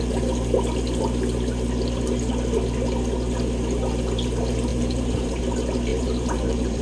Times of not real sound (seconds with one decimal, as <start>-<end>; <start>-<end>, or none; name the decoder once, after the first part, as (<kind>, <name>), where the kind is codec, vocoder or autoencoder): 4.7-5.4 (vocoder, BigVGAN v2); 5.9-6.8